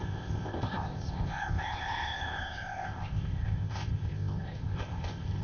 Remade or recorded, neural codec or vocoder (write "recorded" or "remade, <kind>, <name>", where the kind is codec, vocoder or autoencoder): remade, codec, ZipCodec